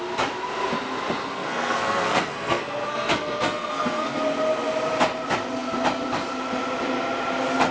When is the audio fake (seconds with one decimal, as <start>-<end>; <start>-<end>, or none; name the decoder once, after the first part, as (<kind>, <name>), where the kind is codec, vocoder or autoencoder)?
1.2-4.2 (codec, SNAC)